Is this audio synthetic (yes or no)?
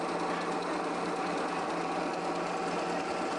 no